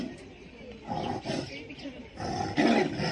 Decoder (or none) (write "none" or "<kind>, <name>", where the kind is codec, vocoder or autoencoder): none